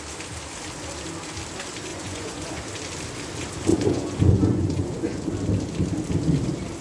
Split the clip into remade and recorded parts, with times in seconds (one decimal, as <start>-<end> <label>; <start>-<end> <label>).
0.0-1.9 recorded; 1.9-2.6 remade; 2.6-3.7 recorded; 3.7-5.2 remade; 5.2-6.8 recorded